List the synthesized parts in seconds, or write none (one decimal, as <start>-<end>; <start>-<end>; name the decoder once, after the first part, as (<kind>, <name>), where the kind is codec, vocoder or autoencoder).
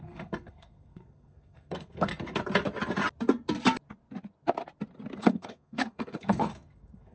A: 0.0-2.1 (codec, SNAC); 5.2-7.1